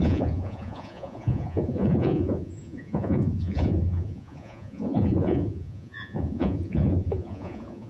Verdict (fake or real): fake